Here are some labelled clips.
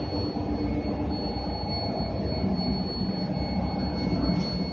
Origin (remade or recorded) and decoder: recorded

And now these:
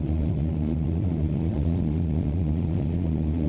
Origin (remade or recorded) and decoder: remade, vocoder, Vocos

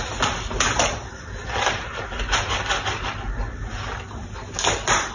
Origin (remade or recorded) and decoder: recorded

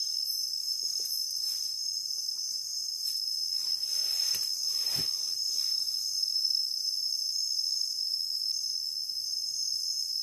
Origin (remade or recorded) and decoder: remade, vocoder, BigVGAN v2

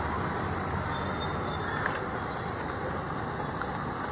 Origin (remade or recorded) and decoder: recorded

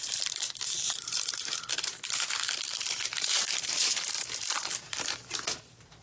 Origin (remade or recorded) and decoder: remade, vocoder, BigVGAN v2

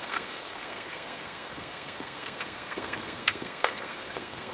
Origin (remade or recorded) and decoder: remade, codec, SNAC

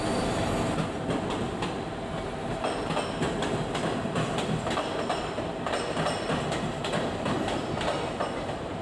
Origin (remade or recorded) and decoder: recorded